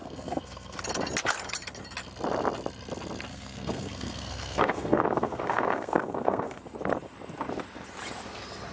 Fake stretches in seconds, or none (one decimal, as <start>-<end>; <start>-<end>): 0.0-0.8; 3.3-6.6